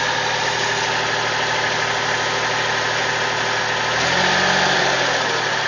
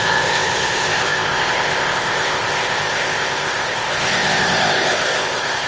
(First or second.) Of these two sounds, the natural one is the first